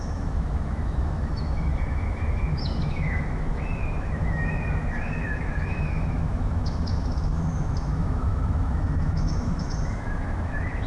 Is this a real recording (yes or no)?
no